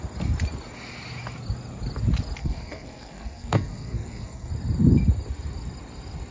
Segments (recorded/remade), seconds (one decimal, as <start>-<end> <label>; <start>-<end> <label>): 0.0-2.4 recorded; 2.4-4.5 remade; 4.5-6.3 recorded